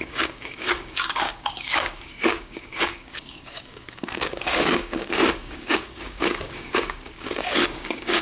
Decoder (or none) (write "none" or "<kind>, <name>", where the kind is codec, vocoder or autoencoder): codec, DAC